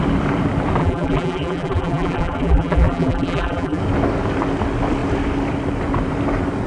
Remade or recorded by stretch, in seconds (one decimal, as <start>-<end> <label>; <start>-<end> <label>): 0.0-0.8 recorded; 0.8-3.8 remade; 3.8-6.7 recorded